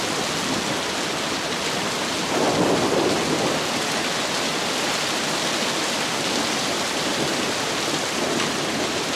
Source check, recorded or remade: recorded